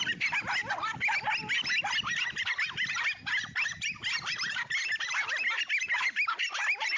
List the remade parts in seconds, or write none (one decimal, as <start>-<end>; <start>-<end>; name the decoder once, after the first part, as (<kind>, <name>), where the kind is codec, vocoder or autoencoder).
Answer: none